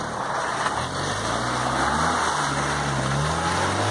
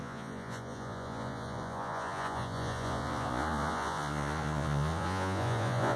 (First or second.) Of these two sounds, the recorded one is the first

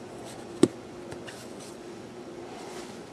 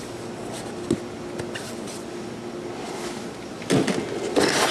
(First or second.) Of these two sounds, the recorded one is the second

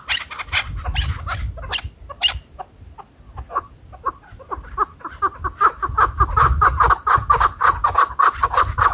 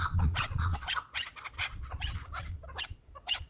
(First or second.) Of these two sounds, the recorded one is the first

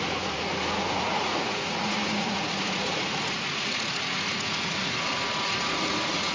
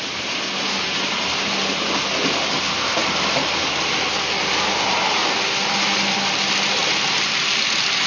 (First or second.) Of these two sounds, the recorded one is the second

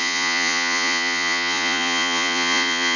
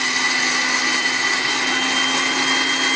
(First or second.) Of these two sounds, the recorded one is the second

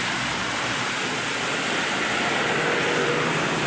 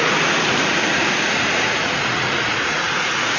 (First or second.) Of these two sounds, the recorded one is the first